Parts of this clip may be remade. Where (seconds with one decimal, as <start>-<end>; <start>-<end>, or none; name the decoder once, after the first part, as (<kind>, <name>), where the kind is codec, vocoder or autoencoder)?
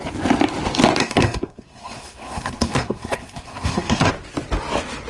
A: 1.0-4.1 (codec, SNAC)